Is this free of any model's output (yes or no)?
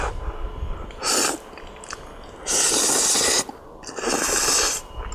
yes